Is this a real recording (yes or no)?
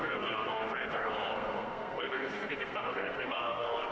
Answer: no